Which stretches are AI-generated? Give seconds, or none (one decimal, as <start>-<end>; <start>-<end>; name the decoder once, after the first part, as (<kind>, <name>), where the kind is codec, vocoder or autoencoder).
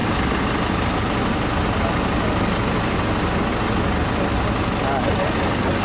none